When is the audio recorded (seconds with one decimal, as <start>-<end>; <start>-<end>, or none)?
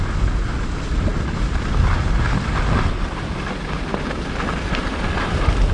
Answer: 0.0-5.7